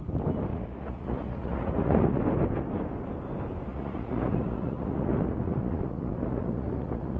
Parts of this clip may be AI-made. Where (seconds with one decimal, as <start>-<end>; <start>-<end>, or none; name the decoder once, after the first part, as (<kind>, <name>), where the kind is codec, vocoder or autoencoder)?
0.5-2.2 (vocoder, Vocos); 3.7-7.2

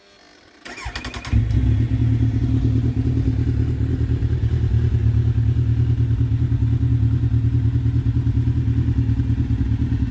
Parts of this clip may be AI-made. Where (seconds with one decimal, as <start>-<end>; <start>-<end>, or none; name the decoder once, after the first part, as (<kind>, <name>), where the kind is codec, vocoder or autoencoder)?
none

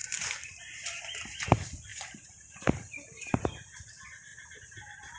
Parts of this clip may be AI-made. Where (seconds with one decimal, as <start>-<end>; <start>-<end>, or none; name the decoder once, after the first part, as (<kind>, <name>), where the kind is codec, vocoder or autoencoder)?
1.9-3.9 (vocoder, BigVGAN v2)